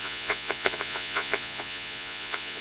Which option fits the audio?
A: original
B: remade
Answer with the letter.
B